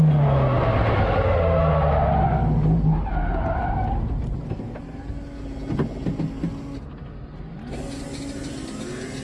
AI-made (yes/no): no